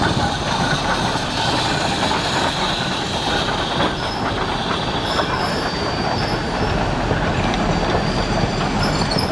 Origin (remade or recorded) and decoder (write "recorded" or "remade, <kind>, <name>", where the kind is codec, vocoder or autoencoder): recorded